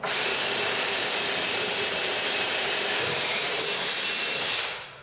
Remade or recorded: remade